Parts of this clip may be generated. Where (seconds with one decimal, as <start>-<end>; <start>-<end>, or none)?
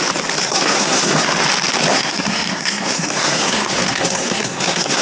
0.4-1.3; 1.9-5.0